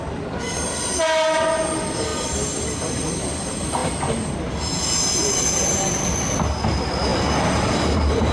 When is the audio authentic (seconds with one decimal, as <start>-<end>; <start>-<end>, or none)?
0.0-8.3